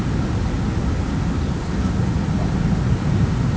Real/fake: real